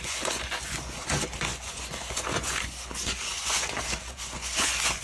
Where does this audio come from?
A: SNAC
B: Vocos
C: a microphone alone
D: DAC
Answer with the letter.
B